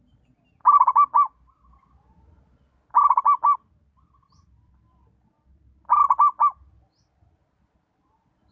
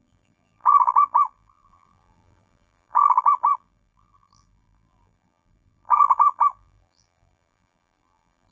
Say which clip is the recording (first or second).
first